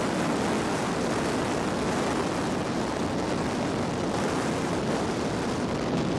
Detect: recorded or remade recorded